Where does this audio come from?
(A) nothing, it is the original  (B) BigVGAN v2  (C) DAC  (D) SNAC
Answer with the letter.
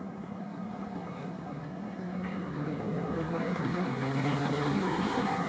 D